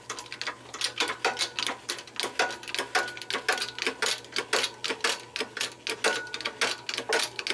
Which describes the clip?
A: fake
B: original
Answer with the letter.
B